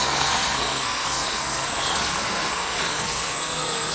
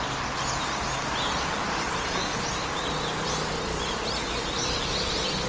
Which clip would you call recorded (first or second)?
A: second